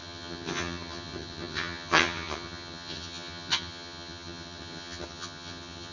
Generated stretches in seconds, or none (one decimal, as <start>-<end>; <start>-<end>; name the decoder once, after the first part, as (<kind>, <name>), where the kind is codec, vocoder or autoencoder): 0.0-5.9 (vocoder, HiFi-GAN)